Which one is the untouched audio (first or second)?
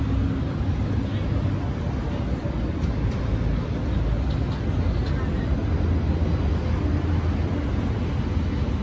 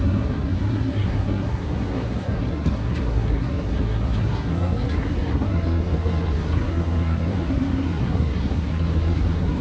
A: first